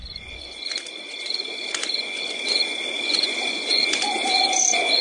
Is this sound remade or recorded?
remade